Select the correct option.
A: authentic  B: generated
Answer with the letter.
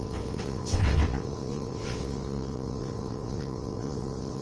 B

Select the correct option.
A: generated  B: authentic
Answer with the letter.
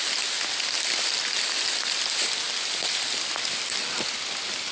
B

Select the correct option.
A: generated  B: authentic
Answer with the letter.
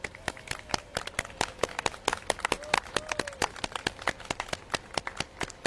B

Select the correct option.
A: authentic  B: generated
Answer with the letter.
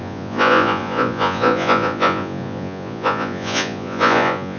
B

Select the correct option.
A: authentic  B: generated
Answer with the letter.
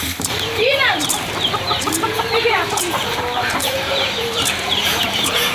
B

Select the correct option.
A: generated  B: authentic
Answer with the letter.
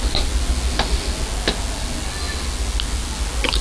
B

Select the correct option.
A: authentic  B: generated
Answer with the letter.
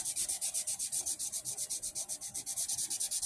A